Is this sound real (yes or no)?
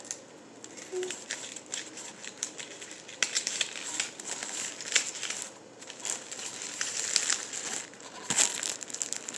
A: yes